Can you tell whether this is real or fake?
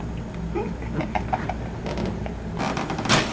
real